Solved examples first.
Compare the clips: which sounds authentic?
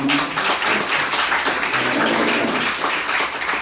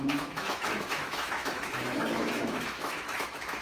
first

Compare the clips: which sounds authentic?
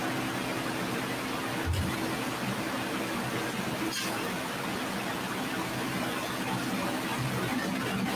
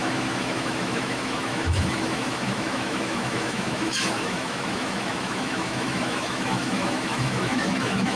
first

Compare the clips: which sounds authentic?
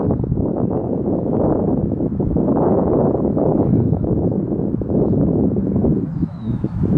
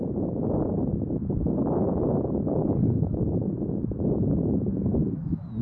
second